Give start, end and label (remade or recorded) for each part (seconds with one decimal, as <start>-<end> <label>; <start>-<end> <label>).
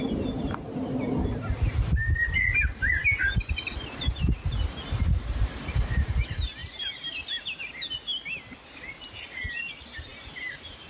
0.0-10.9 recorded